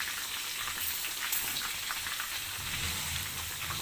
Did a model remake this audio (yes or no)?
no